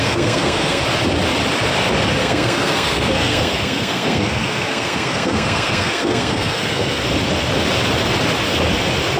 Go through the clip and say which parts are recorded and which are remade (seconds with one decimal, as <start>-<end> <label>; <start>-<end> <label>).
0.0-0.8 remade; 0.8-2.2 recorded; 2.2-7.0 remade; 7.0-9.2 recorded

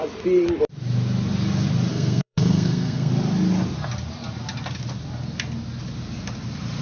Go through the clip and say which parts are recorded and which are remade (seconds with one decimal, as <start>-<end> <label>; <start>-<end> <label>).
0.0-1.9 recorded; 1.9-3.1 remade; 3.1-6.8 recorded

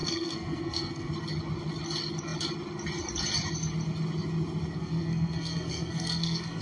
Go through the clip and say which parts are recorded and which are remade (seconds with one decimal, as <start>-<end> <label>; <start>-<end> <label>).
0.0-1.1 remade; 1.1-4.8 recorded; 4.8-6.6 remade

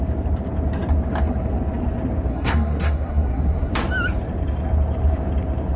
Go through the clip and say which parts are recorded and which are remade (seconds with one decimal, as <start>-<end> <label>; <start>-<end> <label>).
0.0-2.3 recorded; 2.3-3.7 remade; 3.7-5.8 recorded

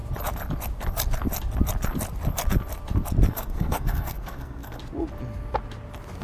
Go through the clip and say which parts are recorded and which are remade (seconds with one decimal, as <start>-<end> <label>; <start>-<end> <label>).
0.0-3.3 recorded; 3.3-4.8 remade; 4.8-6.2 recorded